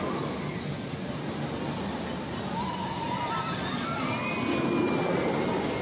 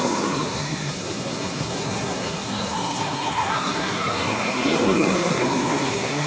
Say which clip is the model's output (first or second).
second